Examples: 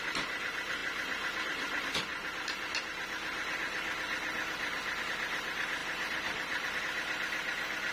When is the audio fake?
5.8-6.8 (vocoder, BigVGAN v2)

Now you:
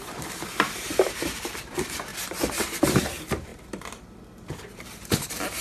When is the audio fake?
0.0-2.1 (vocoder, BigVGAN v2); 2.8-3.5; 4.6-5.6